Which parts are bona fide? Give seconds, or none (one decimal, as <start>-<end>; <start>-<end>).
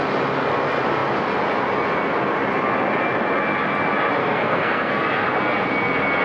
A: 0.0-4.2; 4.9-6.2